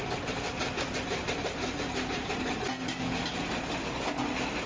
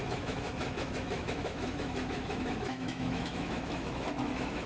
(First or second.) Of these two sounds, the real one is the first